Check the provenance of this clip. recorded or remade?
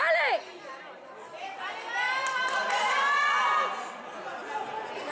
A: recorded